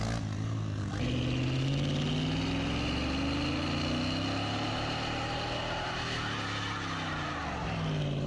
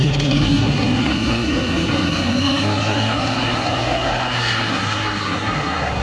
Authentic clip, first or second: first